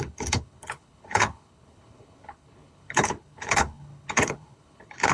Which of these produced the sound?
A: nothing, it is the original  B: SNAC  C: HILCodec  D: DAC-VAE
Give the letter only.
C